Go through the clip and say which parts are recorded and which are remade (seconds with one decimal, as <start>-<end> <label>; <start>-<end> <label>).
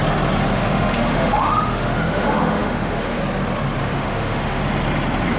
0.0-0.5 recorded; 0.5-3.2 remade; 3.2-3.8 recorded; 3.8-4.6 remade; 4.6-5.4 recorded